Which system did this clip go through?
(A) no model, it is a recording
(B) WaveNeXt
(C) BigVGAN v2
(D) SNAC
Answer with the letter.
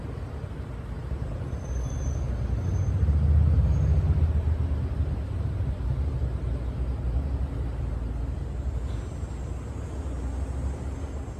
A